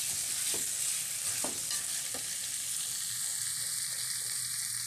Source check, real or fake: real